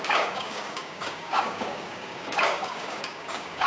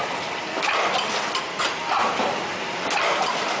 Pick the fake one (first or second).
first